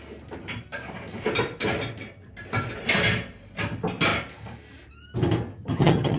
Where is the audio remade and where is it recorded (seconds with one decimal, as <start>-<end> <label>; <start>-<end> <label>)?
0.0-5.5 recorded; 5.5-6.2 remade